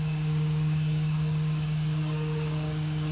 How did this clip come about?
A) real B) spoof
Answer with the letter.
B